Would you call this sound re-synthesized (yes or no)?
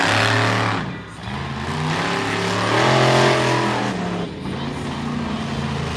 no